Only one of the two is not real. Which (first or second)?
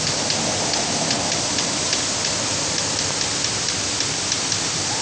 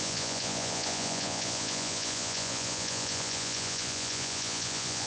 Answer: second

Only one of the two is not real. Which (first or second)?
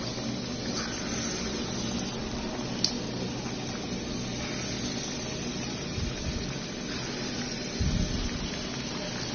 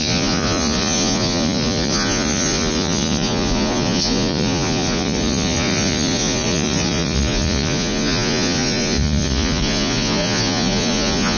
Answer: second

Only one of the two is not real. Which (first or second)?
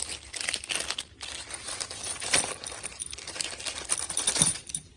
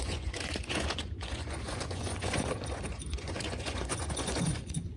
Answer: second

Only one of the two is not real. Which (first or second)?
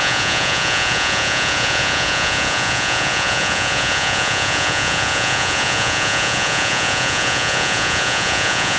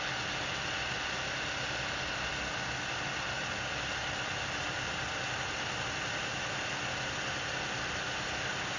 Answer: first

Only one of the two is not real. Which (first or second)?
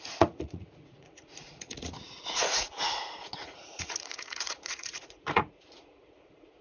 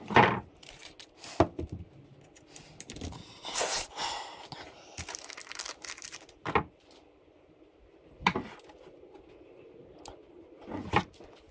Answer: first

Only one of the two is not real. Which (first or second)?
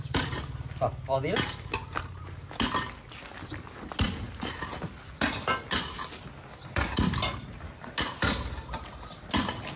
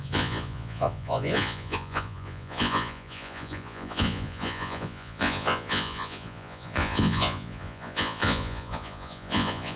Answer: second